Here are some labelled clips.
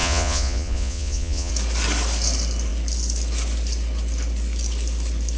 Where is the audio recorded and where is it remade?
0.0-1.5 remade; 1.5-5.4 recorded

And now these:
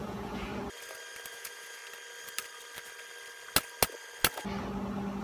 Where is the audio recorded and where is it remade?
0.0-0.5 remade; 0.5-1.3 recorded; 1.3-1.8 remade; 1.8-5.2 recorded

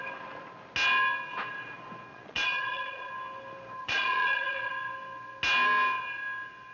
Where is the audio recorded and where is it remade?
0.0-2.1 recorded; 2.1-3.1 remade; 3.1-3.8 recorded; 3.8-4.7 remade; 4.7-6.7 recorded

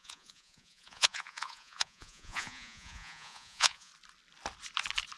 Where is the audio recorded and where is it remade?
0.0-3.9 remade; 3.9-5.2 recorded

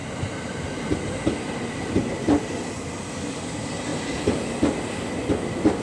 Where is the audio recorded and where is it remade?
0.0-5.8 recorded

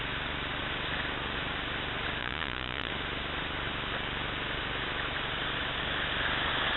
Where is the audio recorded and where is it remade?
0.0-2.2 recorded; 2.2-2.9 remade; 2.9-6.8 recorded

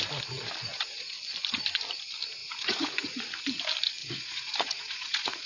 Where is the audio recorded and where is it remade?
0.0-0.7 recorded; 0.7-1.2 remade; 1.2-2.4 recorded; 2.4-3.4 remade; 3.4-4.0 recorded; 4.0-5.5 remade